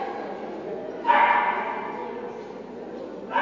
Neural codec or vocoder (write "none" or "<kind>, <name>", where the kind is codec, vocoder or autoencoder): none